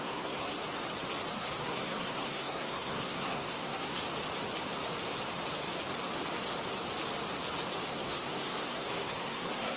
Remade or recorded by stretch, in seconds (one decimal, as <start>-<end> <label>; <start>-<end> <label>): 0.0-0.6 remade; 0.6-1.3 recorded; 1.3-4.0 remade; 4.0-7.9 recorded; 7.9-9.8 remade